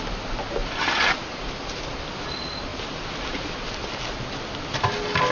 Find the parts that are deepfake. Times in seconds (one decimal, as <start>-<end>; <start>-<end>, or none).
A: 0.6-1.6; 2.7-4.0